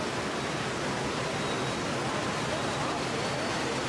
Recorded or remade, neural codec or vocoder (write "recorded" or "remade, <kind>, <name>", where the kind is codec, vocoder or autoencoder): recorded